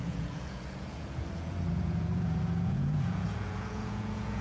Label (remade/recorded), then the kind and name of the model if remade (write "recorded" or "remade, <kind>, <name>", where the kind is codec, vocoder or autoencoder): remade, vocoder, Vocos